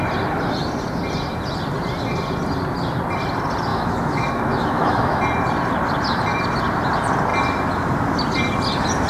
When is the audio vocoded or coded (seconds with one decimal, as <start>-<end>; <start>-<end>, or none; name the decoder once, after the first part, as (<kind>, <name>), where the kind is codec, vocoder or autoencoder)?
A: 3.7-5.2 (autoencoder, DAC-VAE)